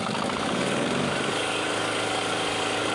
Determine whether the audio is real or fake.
fake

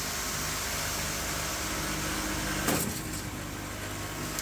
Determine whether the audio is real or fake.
real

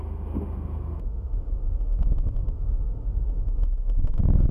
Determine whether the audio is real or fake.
fake